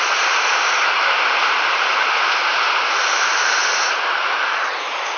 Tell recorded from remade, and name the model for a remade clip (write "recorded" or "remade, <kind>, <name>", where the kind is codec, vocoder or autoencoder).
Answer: remade, vocoder, BigVGAN v2